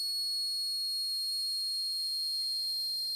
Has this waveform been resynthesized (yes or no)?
no